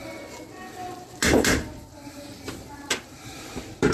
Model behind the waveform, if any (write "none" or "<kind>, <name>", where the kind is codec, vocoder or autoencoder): vocoder, BigVGAN v2